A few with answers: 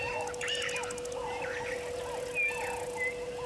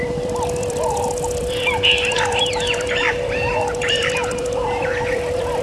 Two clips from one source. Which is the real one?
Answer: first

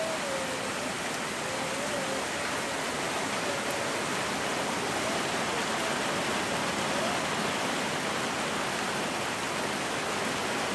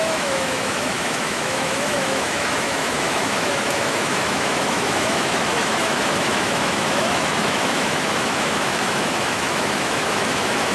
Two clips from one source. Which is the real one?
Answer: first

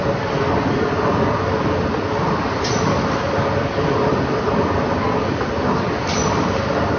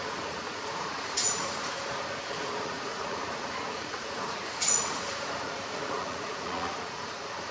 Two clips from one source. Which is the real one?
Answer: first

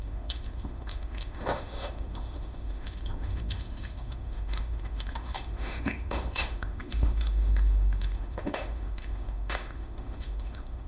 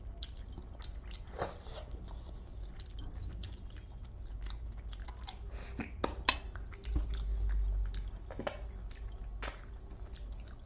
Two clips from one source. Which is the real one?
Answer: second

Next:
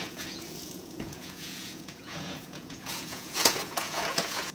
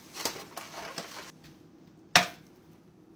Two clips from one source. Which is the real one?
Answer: second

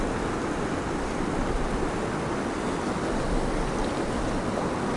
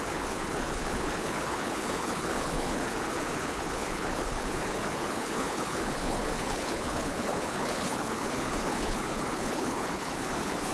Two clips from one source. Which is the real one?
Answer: first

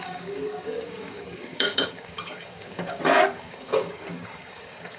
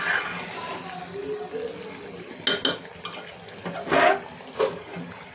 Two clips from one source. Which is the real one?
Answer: second